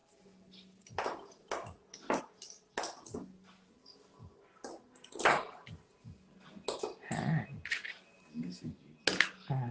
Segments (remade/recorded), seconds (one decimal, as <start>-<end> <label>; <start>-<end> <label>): 0.0-9.7 recorded